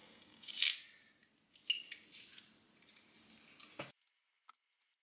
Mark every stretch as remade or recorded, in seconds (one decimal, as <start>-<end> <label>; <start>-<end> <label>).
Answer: 0.0-0.5 remade; 0.5-5.0 recorded